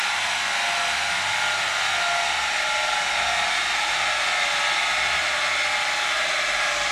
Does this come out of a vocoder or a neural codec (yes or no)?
no